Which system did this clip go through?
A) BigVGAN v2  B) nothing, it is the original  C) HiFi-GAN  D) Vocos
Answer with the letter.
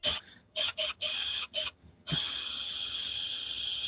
C